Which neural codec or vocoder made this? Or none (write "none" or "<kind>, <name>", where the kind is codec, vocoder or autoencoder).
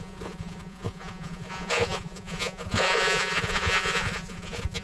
vocoder, Vocos